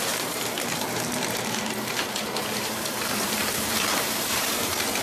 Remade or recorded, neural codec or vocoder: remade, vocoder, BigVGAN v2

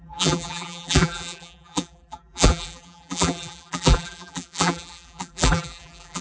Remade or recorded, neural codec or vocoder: remade, vocoder, BigVGAN v2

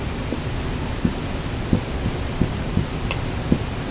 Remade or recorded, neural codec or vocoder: recorded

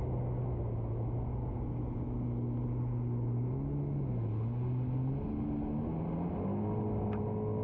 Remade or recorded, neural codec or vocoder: recorded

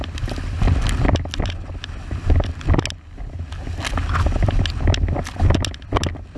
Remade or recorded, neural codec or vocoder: recorded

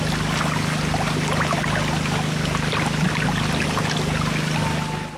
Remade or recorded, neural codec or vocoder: recorded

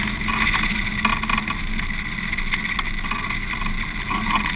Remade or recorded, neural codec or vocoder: recorded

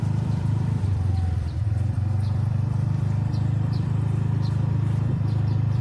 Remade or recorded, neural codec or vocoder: remade, vocoder, BigVGAN v2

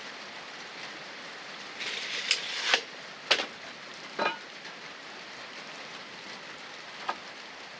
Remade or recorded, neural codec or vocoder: remade, vocoder, BigVGAN v2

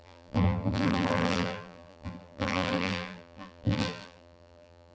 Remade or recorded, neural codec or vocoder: remade, vocoder, BigVGAN v2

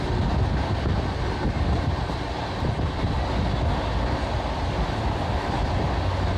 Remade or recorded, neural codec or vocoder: recorded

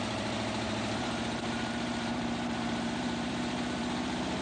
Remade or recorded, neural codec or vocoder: remade, vocoder, BigVGAN v2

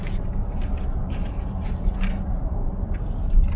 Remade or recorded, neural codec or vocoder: remade, vocoder, BigVGAN v2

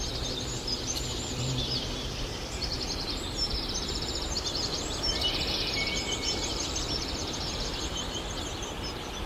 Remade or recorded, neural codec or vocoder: remade, vocoder, BigVGAN v2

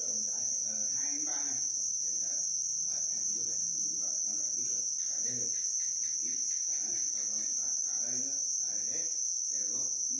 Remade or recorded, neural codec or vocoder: recorded